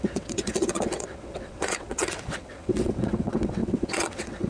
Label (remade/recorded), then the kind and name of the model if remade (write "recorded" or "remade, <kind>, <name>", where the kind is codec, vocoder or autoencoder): remade, vocoder, WaveNeXt